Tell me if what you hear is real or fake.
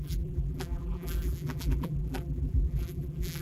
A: fake